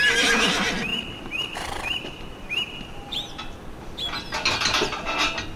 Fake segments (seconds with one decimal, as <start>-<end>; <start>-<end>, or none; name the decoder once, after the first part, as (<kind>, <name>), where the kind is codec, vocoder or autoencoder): 0.9-3.3 (vocoder, BigVGAN v2)